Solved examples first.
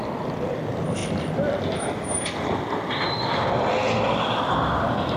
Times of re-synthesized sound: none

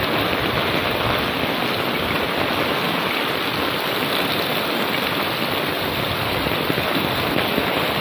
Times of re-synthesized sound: none

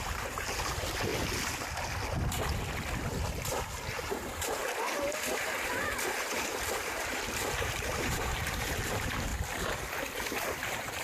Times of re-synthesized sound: 0.0-1.1 (vocoder, BigVGAN v2); 4.0-4.6; 6.2-9.3; 10.1-11.0